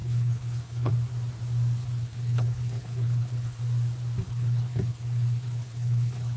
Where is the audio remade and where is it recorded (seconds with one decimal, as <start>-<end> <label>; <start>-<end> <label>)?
0.0-0.9 remade; 0.9-1.8 recorded; 1.8-3.6 remade; 3.6-4.2 recorded; 4.2-6.4 remade